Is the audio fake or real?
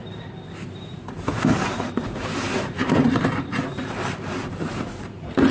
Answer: fake